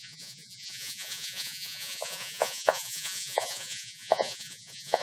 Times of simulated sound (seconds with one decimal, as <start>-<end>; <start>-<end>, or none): 0.0-5.0